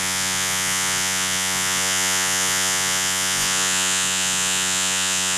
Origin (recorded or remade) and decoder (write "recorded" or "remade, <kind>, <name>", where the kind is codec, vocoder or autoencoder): remade, vocoder, Vocos